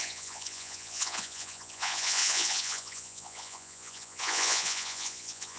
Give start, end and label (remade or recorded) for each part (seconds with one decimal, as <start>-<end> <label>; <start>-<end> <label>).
0.0-5.6 remade